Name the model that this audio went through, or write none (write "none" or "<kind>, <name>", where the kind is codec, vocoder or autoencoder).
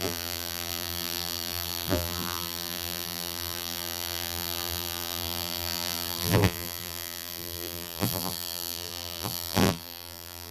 vocoder, BigVGAN v2